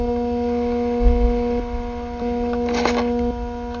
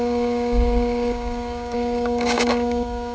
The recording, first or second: first